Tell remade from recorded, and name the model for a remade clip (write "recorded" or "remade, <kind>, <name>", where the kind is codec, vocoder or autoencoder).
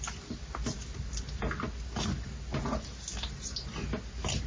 recorded